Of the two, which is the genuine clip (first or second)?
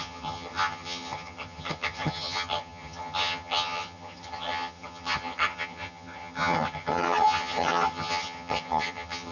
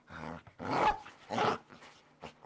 second